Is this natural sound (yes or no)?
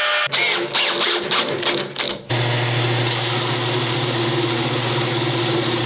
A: yes